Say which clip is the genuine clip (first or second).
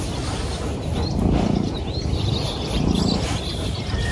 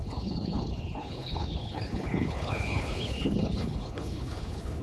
first